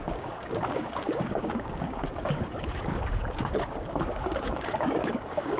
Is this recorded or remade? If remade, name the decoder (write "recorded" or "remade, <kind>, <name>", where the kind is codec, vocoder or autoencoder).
remade, codec, DAC